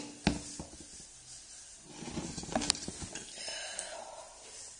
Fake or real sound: real